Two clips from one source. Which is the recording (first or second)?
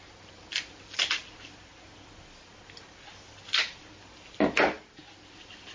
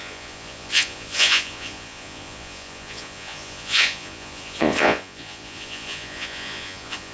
first